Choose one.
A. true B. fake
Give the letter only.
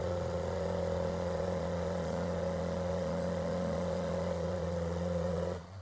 B